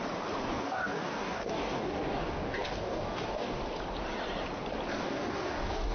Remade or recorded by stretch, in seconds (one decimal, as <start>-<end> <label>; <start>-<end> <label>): 0.0-0.5 recorded; 0.5-3.6 remade; 3.6-5.0 recorded; 5.0-5.9 remade